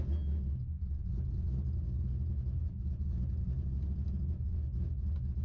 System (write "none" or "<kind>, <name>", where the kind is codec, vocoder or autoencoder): none